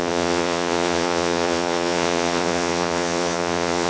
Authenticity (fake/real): fake